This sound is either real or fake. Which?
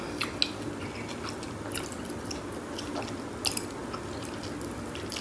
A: real